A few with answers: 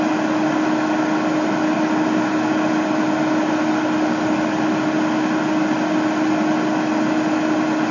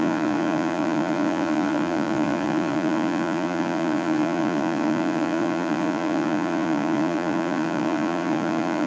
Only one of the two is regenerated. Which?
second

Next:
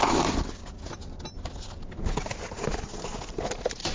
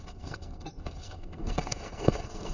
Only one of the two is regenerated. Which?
second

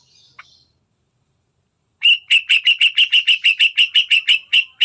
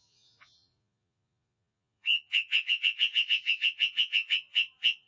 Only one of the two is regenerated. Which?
second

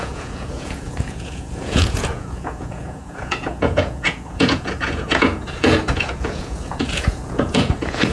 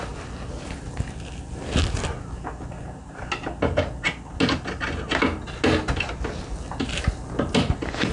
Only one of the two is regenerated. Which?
first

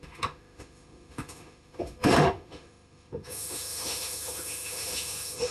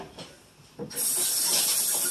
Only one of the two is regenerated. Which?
first